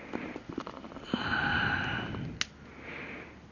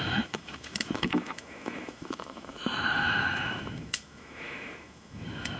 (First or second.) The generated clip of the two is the second